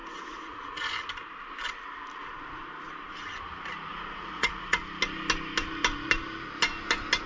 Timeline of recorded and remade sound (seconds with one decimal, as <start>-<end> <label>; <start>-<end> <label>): 0.0-0.9 remade; 0.9-3.9 recorded; 3.9-4.8 remade; 4.8-7.3 recorded